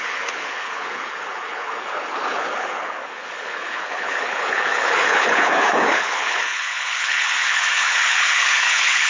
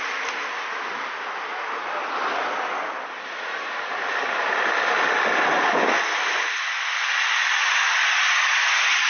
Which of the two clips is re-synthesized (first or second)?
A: first